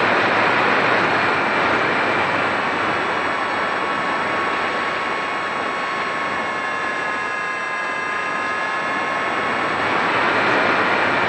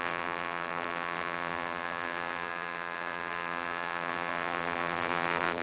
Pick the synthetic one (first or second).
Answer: second